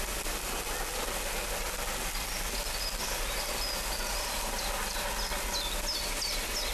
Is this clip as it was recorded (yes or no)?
yes